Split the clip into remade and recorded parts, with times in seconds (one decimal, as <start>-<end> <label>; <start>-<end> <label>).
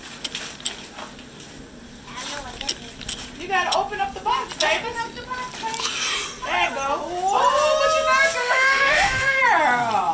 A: 0.0-8.4 recorded; 8.4-9.4 remade; 9.4-10.1 recorded